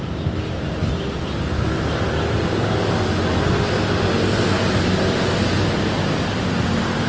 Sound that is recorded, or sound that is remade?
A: recorded